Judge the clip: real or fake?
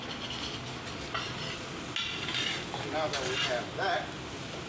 real